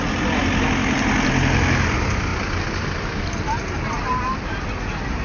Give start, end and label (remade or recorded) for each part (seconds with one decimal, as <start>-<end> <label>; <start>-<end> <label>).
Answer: 0.0-5.2 recorded